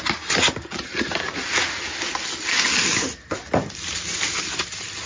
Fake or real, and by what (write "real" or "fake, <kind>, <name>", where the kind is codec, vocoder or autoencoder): real